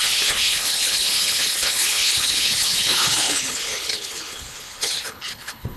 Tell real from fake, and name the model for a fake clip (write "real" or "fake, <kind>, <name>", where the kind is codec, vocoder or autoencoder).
fake, codec, HILCodec